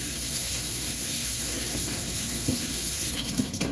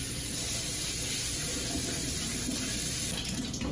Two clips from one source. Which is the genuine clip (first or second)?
second